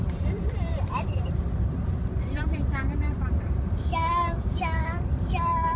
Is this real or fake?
fake